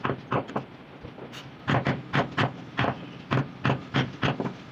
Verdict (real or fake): real